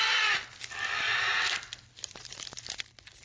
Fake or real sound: real